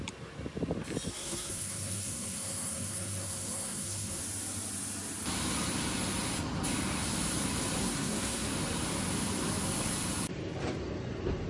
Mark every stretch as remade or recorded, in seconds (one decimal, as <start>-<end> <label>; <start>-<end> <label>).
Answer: 0.0-1.1 recorded; 1.1-4.2 remade; 4.2-7.8 recorded; 7.8-8.5 remade; 8.5-11.5 recorded